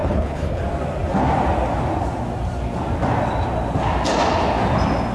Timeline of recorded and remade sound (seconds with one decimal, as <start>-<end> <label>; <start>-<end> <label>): 0.0-0.6 remade; 0.6-5.1 recorded